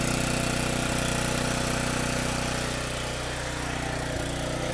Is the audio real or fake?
real